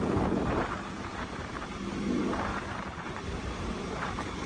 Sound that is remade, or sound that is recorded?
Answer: remade